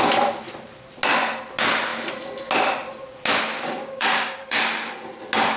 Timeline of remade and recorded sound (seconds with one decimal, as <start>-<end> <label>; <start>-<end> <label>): 0.0-3.8 recorded; 3.8-4.6 remade; 4.6-5.6 recorded